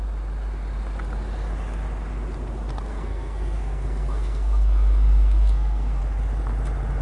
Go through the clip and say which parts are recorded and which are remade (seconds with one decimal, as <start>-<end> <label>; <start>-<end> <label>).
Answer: 0.0-2.9 recorded; 2.9-6.0 remade; 6.0-7.0 recorded

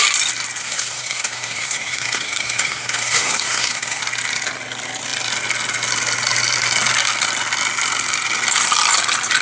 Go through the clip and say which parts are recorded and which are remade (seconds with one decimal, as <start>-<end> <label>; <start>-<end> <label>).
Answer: 0.0-0.6 recorded; 0.6-4.0 remade; 4.0-9.4 recorded

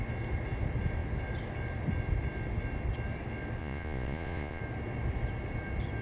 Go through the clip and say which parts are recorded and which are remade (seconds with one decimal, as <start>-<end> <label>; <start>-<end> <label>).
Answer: 0.0-3.6 recorded; 3.6-4.6 remade; 4.6-6.0 recorded

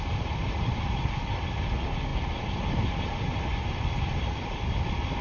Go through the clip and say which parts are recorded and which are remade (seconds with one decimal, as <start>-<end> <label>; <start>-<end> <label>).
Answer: 0.0-5.2 recorded

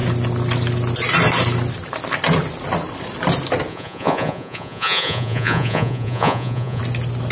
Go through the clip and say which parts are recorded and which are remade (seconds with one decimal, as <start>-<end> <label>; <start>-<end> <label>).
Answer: 0.0-3.7 recorded; 3.7-6.8 remade; 6.8-7.3 recorded